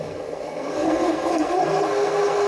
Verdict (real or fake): fake